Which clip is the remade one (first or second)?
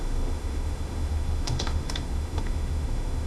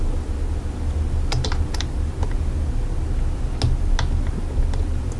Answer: first